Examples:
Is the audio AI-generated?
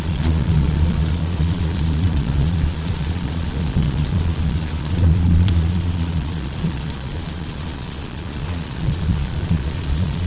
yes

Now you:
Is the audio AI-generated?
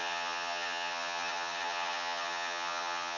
yes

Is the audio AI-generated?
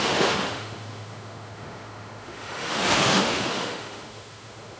yes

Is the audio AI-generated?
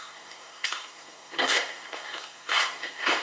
yes